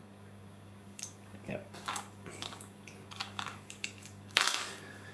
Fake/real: fake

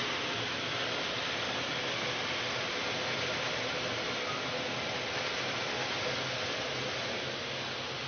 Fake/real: real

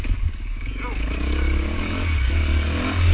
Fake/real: fake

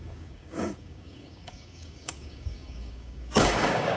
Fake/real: fake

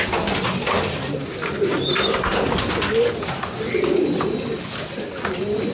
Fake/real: real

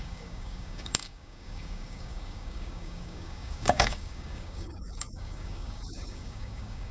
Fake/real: fake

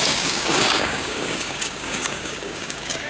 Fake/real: fake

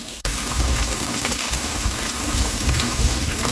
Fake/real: fake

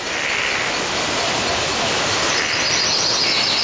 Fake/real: real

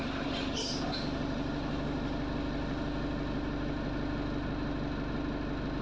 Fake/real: real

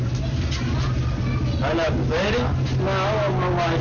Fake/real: real